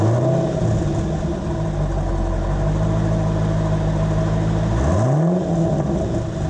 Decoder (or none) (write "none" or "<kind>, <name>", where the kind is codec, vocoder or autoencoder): none